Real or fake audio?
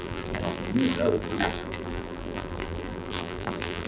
fake